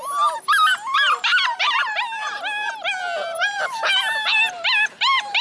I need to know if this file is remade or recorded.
recorded